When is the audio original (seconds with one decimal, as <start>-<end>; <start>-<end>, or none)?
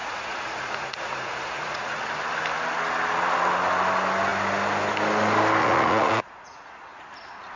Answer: 2.0-5.6; 7.0-7.6